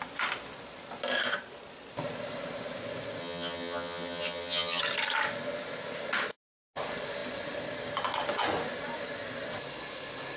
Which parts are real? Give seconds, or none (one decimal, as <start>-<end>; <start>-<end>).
0.0-3.2; 4.8-10.4